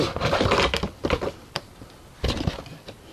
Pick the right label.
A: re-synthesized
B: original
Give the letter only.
B